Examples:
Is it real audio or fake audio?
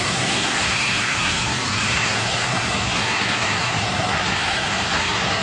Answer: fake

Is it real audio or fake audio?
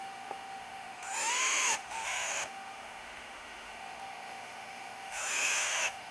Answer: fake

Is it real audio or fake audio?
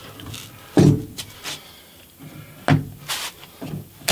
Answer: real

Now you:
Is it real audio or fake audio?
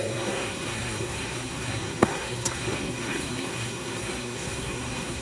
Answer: fake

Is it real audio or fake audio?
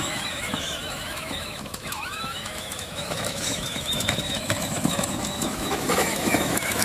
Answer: fake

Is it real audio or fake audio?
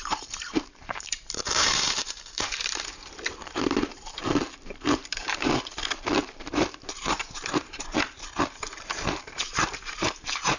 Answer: fake